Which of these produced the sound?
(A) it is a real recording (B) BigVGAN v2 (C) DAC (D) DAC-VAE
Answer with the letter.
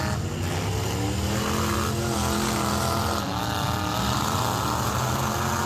A